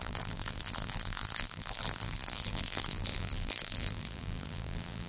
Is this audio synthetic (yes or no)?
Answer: yes